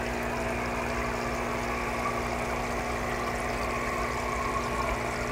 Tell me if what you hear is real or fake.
real